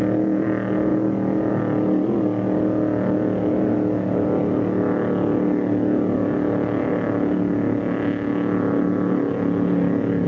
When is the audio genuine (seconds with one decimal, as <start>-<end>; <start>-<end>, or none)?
0.0-10.3